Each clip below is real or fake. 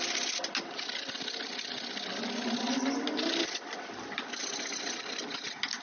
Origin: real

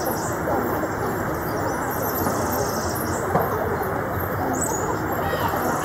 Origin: real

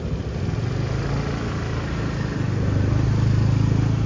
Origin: real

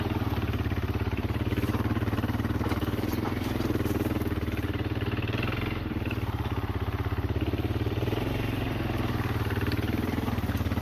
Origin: fake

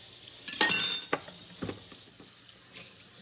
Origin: real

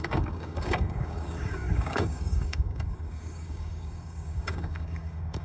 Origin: fake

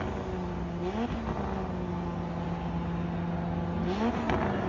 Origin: real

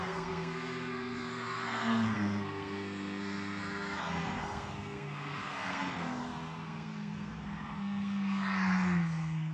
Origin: fake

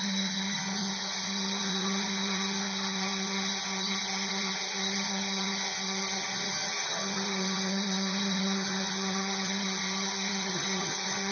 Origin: fake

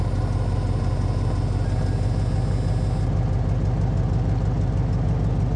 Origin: real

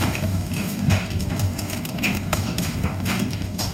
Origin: fake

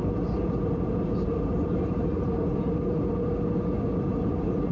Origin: real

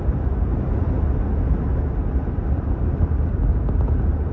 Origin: real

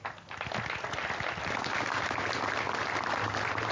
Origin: real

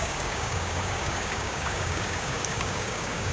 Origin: fake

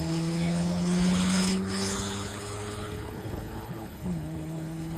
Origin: fake